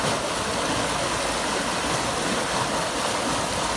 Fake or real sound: real